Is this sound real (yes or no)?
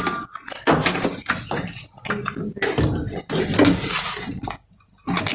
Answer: yes